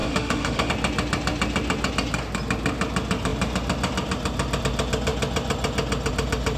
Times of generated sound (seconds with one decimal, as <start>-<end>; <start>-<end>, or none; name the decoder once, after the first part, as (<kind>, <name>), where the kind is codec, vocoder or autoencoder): 0.0-0.7 (autoencoder, DAC-VAE)